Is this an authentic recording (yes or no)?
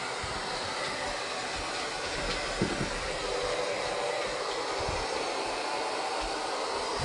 yes